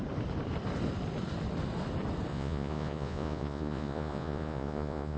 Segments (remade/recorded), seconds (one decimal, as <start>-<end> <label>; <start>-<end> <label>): 0.0-2.3 recorded; 2.3-5.2 remade